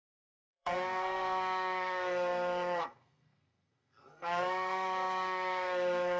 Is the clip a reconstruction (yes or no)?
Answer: yes